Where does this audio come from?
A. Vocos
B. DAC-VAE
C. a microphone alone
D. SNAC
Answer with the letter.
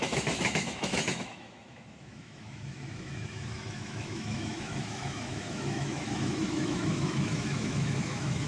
B